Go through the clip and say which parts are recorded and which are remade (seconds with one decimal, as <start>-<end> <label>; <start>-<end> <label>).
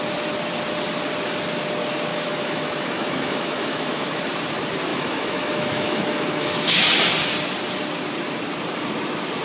0.0-2.1 recorded; 2.1-4.2 remade; 4.2-4.9 recorded; 4.9-6.8 remade; 6.8-9.4 recorded